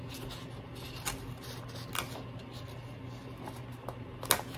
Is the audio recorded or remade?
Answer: recorded